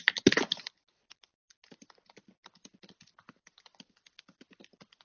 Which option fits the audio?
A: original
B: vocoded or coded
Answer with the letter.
A